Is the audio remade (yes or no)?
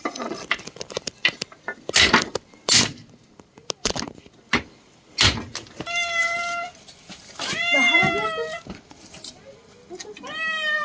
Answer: no